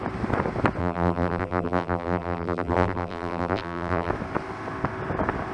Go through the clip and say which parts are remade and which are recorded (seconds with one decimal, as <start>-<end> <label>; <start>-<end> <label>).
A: 0.0-0.8 recorded; 0.8-4.1 remade; 4.1-5.5 recorded